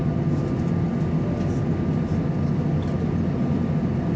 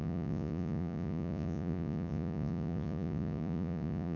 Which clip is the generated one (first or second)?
second